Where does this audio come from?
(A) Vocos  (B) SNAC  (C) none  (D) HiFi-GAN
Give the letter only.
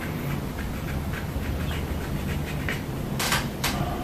C